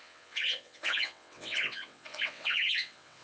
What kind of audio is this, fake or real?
fake